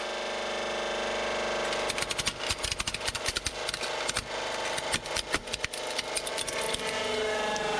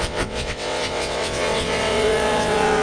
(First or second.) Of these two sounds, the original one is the first